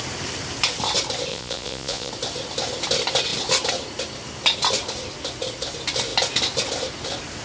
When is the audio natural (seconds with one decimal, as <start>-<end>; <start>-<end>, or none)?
0.0-1.3; 2.1-7.4